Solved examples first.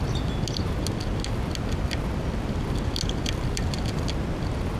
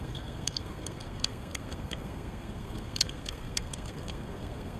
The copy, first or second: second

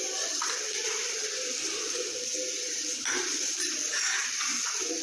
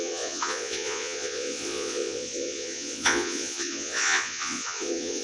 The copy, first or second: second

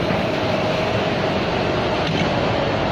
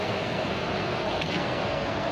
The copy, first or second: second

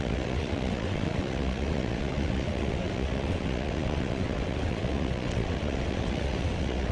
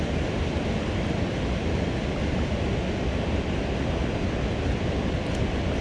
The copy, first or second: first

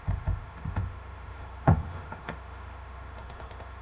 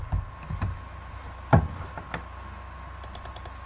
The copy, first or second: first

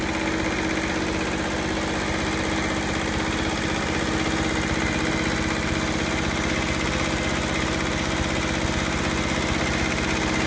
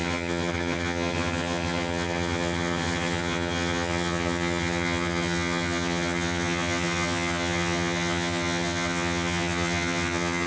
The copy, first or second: second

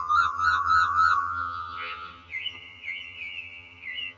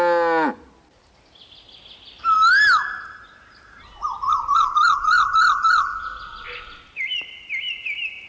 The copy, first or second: first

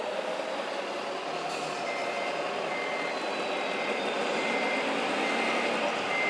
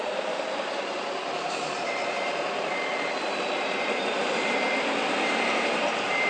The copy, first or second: second